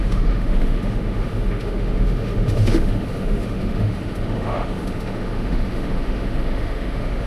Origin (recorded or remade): remade